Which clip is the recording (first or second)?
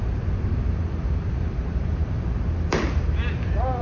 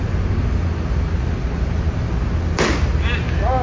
second